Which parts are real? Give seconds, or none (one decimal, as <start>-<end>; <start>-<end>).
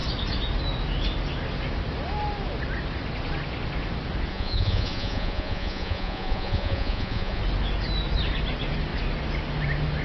0.0-4.3; 7.4-10.0